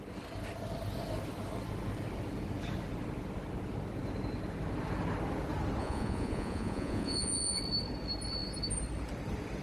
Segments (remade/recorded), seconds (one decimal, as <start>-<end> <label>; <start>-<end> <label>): 0.0-5.8 recorded; 5.8-7.6 remade; 7.6-9.6 recorded